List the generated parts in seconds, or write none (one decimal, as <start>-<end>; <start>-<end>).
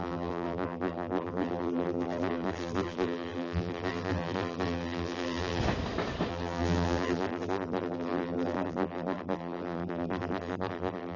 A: 0.0-5.6; 6.3-11.2